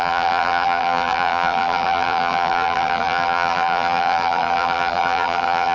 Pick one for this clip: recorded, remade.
remade